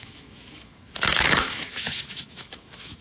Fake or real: fake